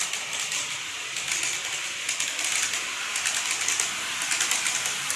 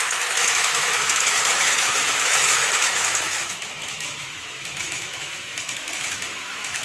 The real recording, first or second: first